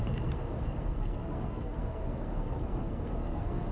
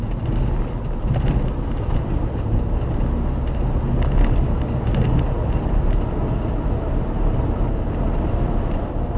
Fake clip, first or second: first